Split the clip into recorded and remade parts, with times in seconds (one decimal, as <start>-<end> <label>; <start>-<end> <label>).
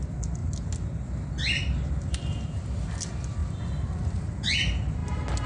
0.0-5.5 recorded